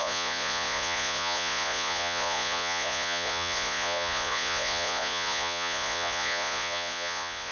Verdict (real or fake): fake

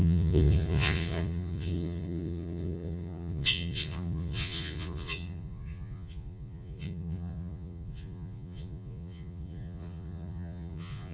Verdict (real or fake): fake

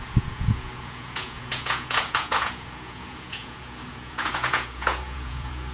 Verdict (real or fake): fake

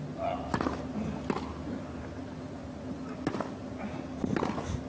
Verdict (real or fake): real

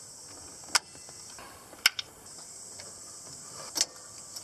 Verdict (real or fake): real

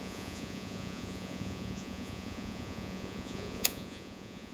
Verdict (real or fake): fake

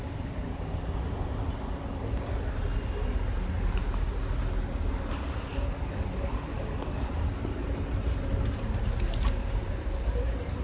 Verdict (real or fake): real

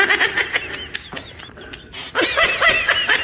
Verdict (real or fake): real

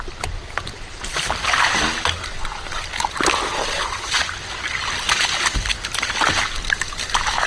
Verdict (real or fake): real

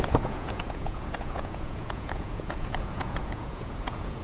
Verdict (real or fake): fake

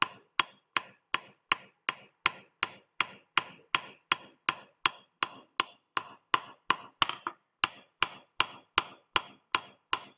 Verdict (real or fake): real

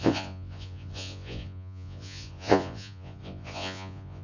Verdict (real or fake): fake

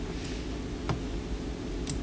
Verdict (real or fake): real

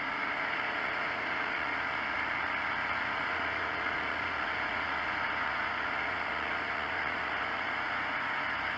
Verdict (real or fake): fake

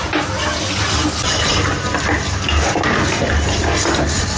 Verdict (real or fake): real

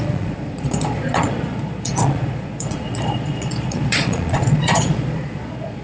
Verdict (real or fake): fake